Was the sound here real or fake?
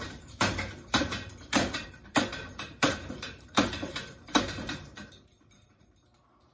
fake